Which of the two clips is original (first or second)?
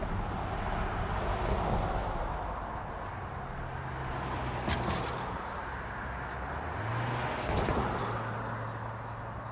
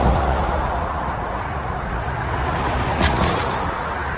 first